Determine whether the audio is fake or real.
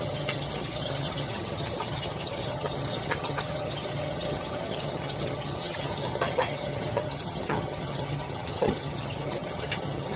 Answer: fake